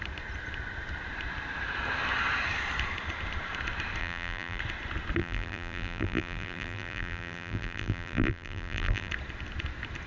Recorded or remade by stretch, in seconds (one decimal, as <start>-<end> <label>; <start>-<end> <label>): 0.0-4.0 recorded; 4.0-4.6 remade; 4.6-5.2 recorded; 5.2-9.1 remade; 9.1-10.1 recorded